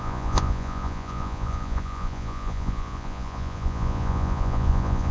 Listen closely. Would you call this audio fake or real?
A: fake